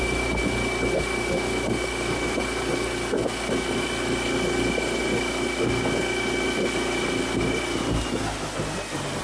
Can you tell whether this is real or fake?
real